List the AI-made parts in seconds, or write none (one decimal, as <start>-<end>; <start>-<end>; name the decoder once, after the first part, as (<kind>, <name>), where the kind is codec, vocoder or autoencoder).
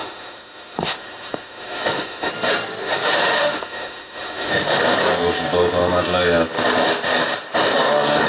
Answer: 0.0-2.3 (autoencoder, DAC-VAE); 2.8-4.8